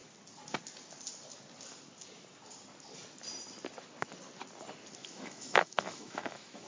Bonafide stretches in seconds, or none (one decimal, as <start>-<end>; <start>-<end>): 0.0-5.0